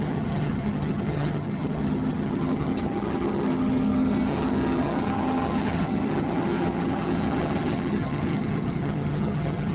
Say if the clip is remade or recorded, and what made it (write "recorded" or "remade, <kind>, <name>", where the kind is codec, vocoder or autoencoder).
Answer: remade, vocoder, HiFi-GAN